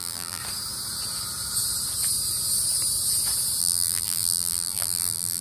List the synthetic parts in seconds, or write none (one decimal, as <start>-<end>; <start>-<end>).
0.0-0.4; 3.6-5.4